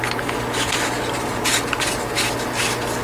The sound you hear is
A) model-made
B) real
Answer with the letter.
B